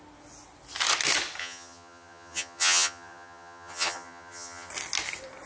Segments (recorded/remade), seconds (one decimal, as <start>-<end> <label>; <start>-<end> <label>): 0.0-1.4 recorded; 1.4-4.7 remade; 4.7-5.5 recorded